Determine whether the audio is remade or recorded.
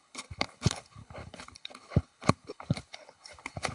remade